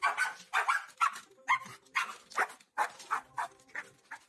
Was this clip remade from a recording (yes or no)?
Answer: no